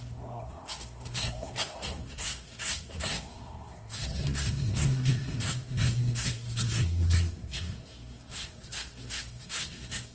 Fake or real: fake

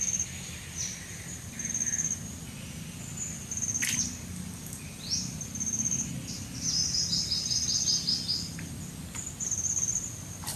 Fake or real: real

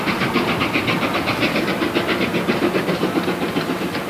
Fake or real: real